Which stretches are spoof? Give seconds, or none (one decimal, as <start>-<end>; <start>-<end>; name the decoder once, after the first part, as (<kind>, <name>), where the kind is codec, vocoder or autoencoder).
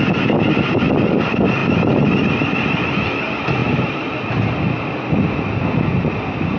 none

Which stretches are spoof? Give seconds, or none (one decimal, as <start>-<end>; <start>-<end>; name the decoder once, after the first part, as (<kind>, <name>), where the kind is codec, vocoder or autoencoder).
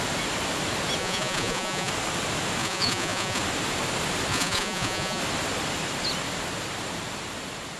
1.0-1.9 (vocoder, Vocos); 2.6-3.4; 4.3-5.2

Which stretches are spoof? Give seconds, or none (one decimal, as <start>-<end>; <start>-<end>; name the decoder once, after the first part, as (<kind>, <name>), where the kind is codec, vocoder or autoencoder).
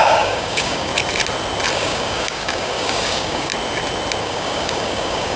0.0-0.9 (codec, DAC); 1.7-3.5; 4.2-5.4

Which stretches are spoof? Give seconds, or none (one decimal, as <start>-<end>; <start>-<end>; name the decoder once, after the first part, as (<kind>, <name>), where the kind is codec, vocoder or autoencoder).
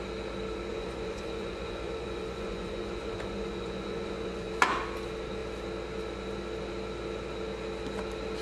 0.7-4.8 (vocoder, Vocos)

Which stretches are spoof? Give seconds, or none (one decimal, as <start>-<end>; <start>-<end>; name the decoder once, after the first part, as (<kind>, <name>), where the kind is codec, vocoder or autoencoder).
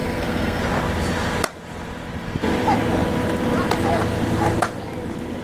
0.0-0.6 (codec, SNAC)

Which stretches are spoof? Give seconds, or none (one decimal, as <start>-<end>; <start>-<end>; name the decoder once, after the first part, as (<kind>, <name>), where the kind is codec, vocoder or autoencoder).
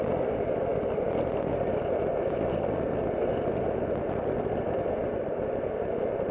5.2-6.3 (vocoder, BigVGAN v2)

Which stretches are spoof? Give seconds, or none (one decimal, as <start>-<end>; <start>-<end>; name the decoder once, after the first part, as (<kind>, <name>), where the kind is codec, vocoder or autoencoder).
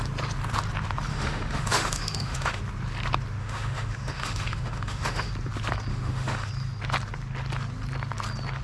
1.1-2.6 (autoencoder, DAC-VAE); 3.4-5.3; 5.9-6.5